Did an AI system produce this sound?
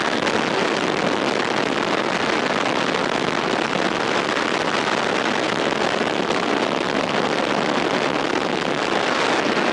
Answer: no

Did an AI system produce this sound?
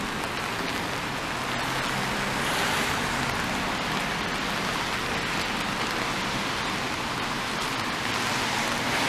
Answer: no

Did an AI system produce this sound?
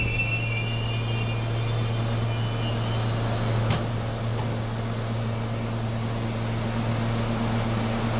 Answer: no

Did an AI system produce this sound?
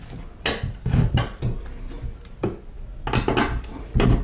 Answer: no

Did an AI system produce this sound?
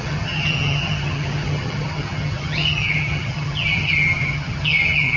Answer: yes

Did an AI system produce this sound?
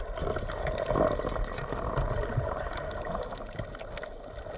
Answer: no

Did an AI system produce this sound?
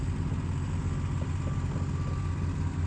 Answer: no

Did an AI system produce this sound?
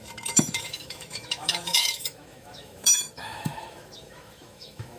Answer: yes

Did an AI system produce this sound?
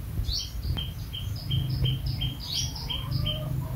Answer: no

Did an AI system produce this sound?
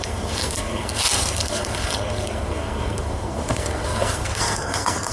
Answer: yes